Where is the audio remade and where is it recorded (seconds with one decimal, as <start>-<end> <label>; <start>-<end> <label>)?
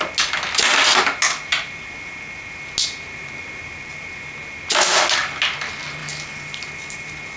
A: 0.0-7.4 recorded